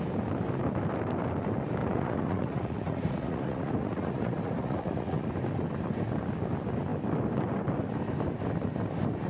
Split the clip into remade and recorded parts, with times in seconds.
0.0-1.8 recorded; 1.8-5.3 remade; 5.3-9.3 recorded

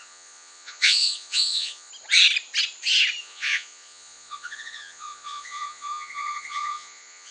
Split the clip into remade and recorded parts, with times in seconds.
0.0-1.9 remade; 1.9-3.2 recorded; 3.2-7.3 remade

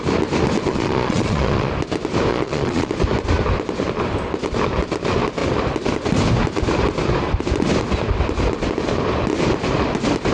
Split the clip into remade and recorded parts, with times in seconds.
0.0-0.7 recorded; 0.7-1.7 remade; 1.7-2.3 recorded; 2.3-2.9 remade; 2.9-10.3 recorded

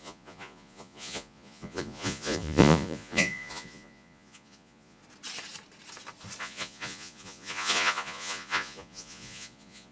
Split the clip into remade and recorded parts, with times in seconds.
0.0-5.0 remade; 5.0-6.4 recorded; 6.4-9.9 remade